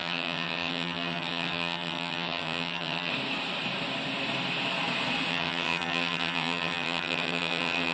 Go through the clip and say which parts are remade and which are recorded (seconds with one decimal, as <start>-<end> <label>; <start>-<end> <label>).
0.0-3.1 remade; 3.1-5.3 recorded; 5.3-7.9 remade